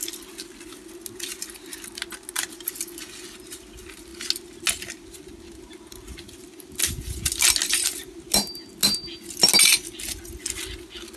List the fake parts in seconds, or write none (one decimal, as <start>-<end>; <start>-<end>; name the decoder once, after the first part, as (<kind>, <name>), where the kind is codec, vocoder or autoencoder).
none